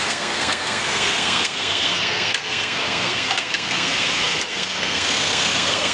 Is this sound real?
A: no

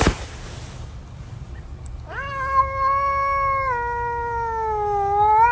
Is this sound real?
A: yes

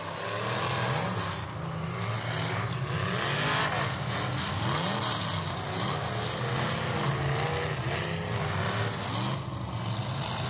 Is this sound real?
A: yes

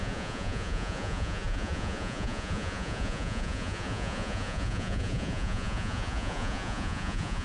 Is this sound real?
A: no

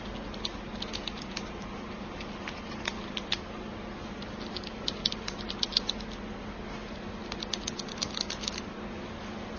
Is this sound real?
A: yes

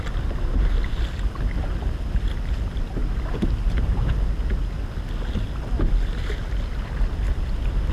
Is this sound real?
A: yes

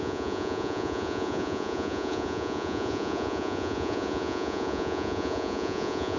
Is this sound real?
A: no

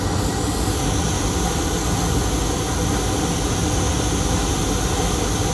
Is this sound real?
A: yes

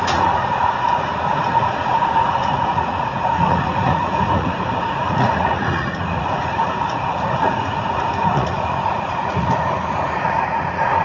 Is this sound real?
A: no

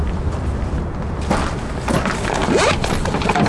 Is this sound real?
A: no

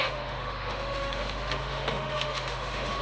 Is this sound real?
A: no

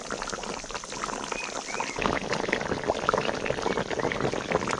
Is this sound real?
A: yes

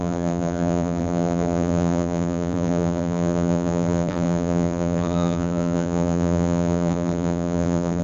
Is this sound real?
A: no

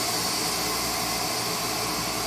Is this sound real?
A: yes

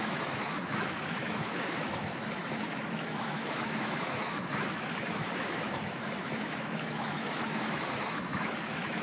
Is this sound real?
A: no